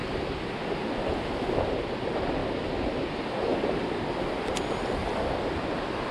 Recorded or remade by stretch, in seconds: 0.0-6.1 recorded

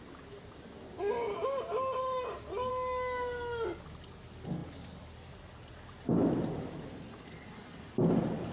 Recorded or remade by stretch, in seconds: 0.0-8.5 recorded

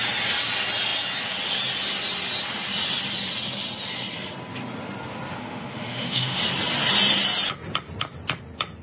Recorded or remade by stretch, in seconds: 0.0-5.3 recorded; 5.3-6.4 remade; 6.4-8.8 recorded

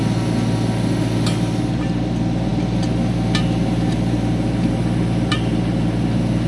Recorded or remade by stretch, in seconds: 0.0-6.5 recorded